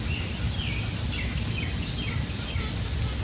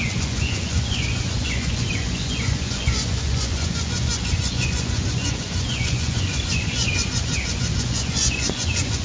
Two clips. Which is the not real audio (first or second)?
second